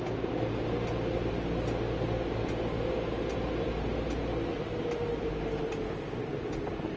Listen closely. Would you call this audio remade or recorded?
recorded